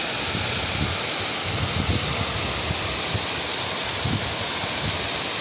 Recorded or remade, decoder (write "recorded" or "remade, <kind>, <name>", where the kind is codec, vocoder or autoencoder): recorded